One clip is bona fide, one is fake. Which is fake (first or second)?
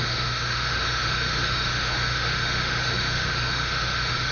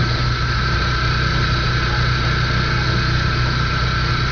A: first